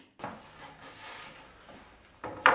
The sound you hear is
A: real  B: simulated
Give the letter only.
A